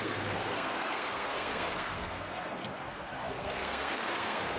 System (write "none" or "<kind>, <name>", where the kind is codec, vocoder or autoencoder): codec, SNAC